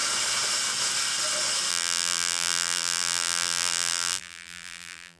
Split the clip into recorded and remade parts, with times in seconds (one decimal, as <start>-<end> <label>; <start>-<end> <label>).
0.0-1.7 recorded; 1.7-5.2 remade